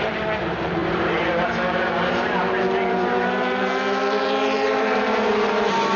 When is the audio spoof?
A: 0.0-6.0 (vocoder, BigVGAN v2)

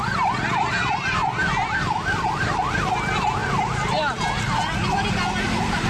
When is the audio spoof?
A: none

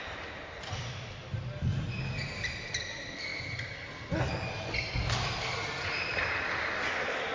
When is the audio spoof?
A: none

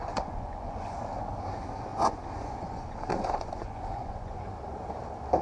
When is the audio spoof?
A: 0.0-1.0 (vocoder, Vocos); 1.9-4.5

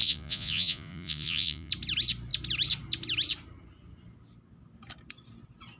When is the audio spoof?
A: 0.0-1.7 (vocoder, Vocos)

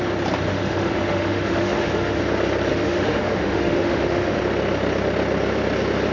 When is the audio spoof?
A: 0.5-2.2 (autoencoder, DAC-VAE); 2.7-4.4